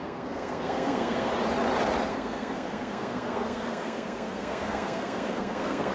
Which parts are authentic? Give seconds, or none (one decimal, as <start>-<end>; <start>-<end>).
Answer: 1.3-2.1